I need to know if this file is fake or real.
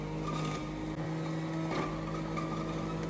real